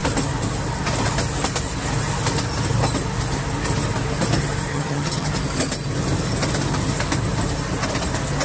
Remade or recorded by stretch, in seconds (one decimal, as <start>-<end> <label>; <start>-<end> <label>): 0.0-4.7 recorded; 4.7-5.3 remade; 5.3-8.4 recorded